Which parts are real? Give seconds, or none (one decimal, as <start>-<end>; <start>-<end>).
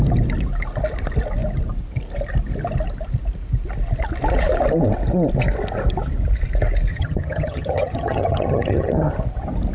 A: 0.0-6.9; 9.1-9.7